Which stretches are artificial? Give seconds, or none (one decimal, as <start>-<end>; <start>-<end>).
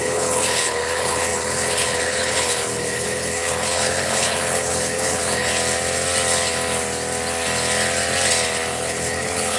0.0-5.5; 8.7-9.6